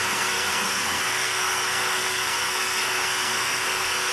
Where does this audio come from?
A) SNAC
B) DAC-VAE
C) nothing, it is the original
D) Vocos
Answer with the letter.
A